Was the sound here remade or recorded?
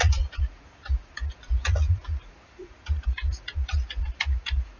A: remade